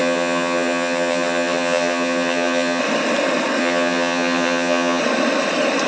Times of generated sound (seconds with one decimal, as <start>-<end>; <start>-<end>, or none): 0.0-2.8; 3.6-5.0